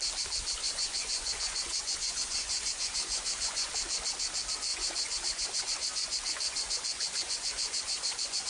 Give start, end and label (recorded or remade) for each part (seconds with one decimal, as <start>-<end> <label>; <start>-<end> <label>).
0.0-0.6 recorded; 0.6-3.7 remade; 3.7-4.7 recorded; 4.7-8.5 remade